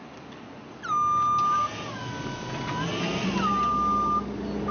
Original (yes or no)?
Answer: yes